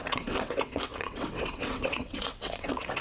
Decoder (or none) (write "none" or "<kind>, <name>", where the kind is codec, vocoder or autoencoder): vocoder, WaveNeXt